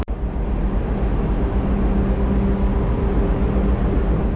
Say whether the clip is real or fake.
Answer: real